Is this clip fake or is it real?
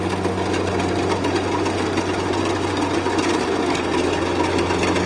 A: real